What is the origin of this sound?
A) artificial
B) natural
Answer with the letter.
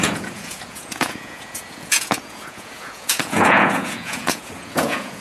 A